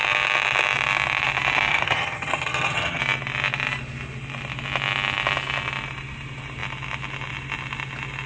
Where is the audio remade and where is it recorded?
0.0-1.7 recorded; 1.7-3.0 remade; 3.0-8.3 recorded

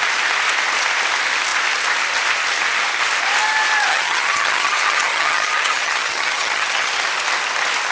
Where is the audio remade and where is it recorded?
0.0-3.9 recorded; 3.9-6.9 remade; 6.9-7.9 recorded

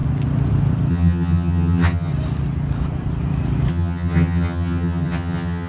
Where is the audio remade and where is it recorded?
0.0-0.9 recorded; 0.9-2.1 remade; 2.1-3.7 recorded; 3.7-5.7 remade